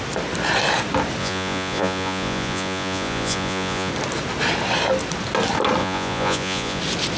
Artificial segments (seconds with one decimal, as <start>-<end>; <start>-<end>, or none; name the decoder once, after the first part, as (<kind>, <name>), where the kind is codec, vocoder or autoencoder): 1.2-3.9 (vocoder, Vocos); 5.8-6.8